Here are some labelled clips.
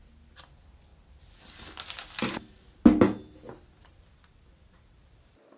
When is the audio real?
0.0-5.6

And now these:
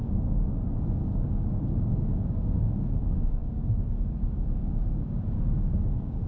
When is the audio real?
none